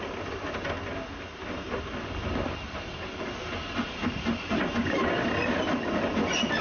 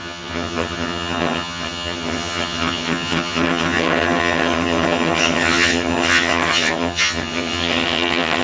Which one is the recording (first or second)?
first